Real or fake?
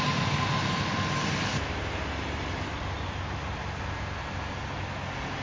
real